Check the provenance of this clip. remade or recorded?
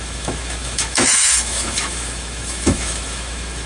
remade